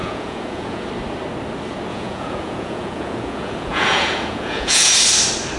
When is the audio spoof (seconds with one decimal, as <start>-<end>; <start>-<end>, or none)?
0.0-0.9; 1.9-4.9